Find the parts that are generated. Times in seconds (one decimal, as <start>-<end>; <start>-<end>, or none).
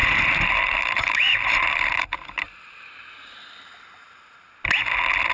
0.0-2.9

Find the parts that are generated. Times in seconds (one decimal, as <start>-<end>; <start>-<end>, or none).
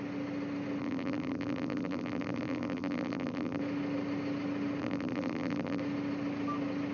0.8-3.6; 4.8-5.8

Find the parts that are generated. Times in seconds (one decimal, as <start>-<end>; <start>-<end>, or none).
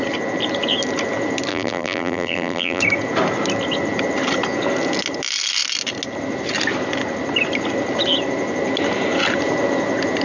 1.5-2.8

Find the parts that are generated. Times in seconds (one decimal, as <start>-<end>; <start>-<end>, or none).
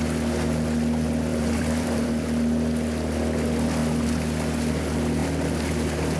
1.3-2.1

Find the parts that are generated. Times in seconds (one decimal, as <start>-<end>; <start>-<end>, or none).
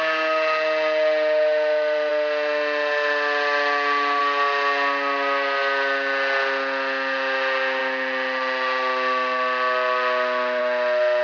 none